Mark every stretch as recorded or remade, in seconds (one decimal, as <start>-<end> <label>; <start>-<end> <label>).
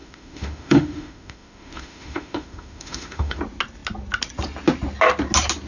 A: 0.0-3.4 remade; 3.4-5.7 recorded